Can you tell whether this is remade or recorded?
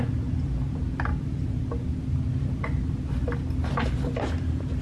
recorded